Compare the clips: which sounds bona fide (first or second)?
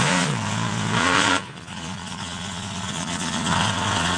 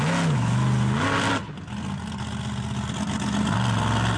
second